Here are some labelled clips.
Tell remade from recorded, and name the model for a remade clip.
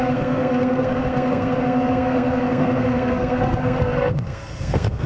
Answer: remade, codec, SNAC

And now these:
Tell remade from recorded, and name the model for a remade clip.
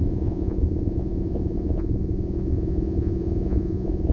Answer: remade, vocoder, Vocos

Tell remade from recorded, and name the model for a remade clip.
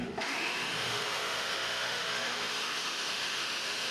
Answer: remade, autoencoder, DAC-VAE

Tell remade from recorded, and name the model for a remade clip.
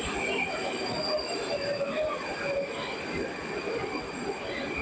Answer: recorded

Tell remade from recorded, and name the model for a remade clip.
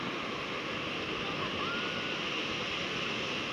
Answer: recorded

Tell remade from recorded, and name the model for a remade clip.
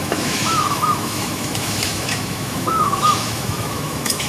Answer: remade, autoencoder, DAC-VAE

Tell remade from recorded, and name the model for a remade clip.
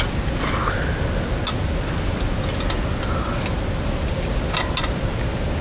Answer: recorded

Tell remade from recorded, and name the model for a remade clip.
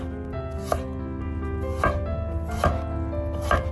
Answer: recorded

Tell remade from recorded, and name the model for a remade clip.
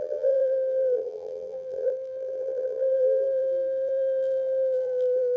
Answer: remade, vocoder, BigVGAN v2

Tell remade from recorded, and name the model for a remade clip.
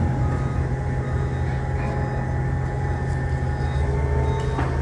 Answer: recorded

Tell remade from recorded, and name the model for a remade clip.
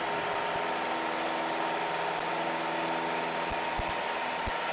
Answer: recorded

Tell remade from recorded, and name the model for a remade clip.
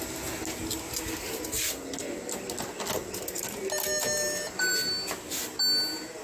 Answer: recorded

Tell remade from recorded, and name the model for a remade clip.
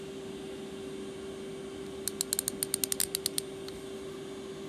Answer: recorded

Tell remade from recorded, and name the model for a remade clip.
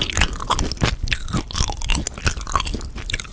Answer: recorded